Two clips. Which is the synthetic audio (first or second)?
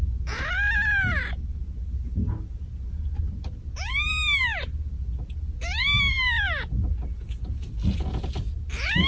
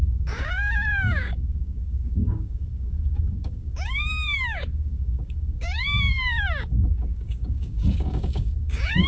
second